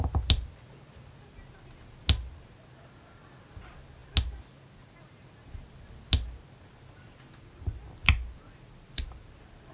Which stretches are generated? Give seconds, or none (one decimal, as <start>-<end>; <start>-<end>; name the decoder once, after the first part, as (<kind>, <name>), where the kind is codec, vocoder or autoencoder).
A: none